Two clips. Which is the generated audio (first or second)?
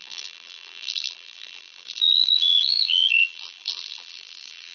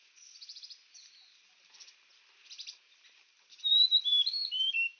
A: first